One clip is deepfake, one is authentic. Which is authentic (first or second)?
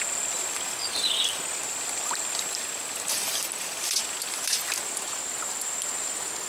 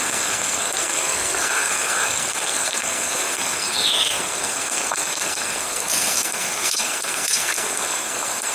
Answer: first